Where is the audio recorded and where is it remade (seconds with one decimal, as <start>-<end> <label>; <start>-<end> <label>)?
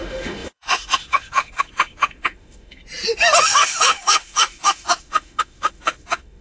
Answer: 0.0-2.8 remade; 2.8-3.4 recorded; 3.4-6.4 remade